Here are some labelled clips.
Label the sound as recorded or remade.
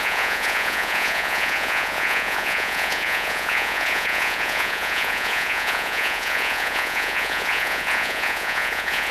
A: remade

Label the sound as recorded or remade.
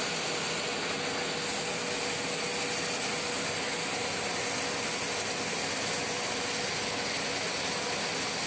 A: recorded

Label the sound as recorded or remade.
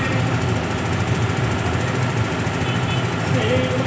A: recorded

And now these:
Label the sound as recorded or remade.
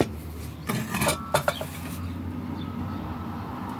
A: recorded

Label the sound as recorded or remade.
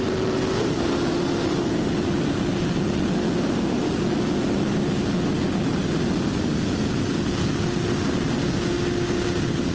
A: recorded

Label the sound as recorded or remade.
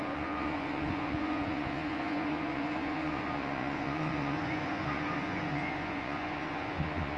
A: remade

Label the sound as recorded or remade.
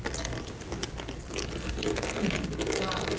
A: recorded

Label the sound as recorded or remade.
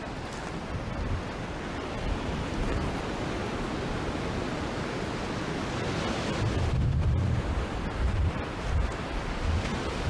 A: recorded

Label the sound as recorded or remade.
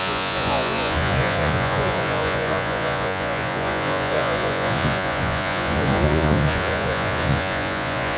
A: remade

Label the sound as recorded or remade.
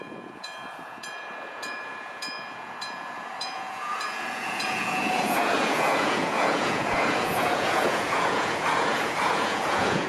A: remade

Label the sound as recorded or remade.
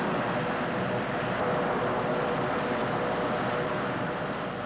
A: recorded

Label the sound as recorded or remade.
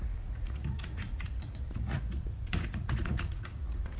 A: remade